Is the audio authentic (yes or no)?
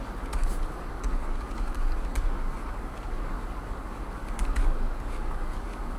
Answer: no